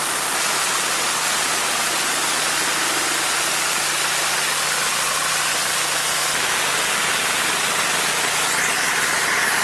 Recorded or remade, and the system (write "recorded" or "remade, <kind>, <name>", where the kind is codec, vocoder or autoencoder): recorded